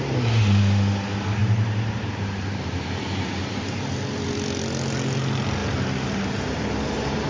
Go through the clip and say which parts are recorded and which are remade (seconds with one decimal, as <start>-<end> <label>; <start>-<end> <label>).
0.0-1.4 recorded; 1.4-3.9 remade; 3.9-5.6 recorded; 5.6-7.3 remade